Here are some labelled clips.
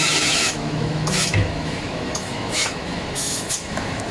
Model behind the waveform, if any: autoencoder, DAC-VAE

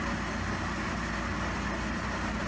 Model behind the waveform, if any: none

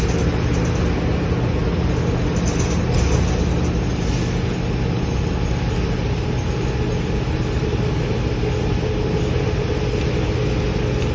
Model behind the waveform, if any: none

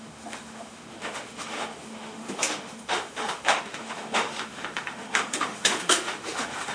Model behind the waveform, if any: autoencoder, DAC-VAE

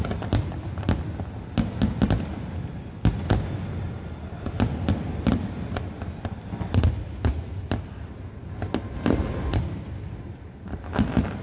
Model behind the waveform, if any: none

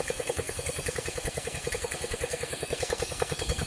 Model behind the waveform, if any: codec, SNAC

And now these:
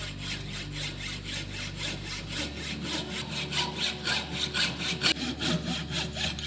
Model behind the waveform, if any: none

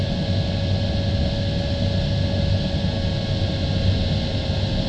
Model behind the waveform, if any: none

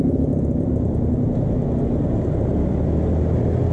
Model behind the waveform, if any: none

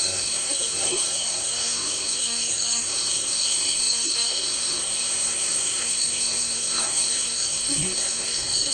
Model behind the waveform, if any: codec, SNAC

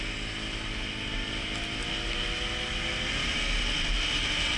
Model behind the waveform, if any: none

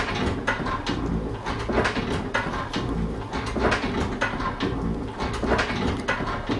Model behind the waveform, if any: none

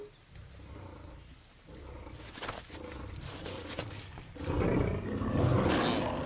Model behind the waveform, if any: none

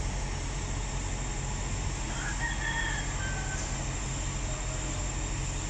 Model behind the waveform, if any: none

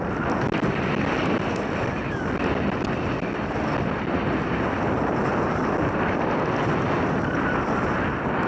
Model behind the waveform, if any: none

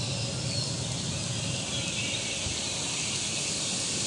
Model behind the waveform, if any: none